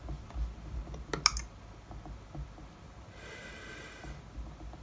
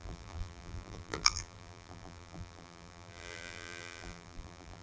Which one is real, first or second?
first